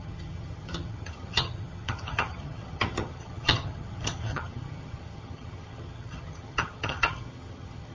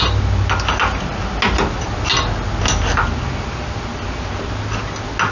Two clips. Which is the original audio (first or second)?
second